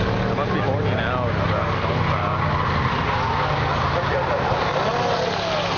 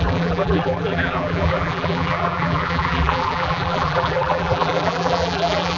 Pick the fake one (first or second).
second